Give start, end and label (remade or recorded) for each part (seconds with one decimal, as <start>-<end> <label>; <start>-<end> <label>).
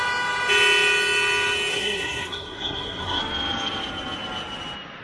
0.0-1.7 recorded; 1.7-3.2 remade; 3.2-5.0 recorded